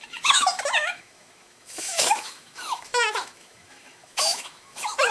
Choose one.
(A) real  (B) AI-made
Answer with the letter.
B